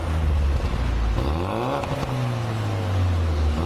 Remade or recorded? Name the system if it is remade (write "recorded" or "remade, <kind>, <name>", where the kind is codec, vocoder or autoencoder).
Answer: recorded